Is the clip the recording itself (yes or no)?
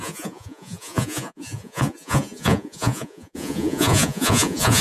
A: no